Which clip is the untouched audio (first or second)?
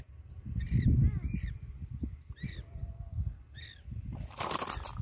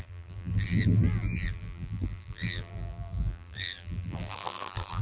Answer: first